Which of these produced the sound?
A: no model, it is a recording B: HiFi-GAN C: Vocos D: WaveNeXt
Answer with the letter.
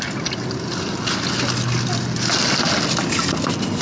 A